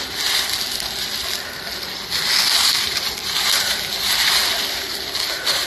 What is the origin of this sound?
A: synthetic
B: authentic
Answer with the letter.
B